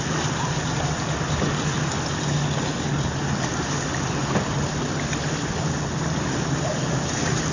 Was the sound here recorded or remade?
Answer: recorded